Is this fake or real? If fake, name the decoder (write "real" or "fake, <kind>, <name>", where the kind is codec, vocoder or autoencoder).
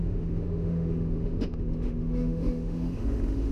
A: fake, autoencoder, DAC-VAE